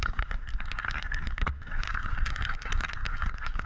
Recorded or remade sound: remade